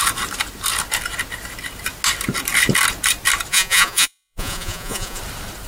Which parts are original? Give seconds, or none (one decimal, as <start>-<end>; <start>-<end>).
0.0-3.5; 5.2-5.7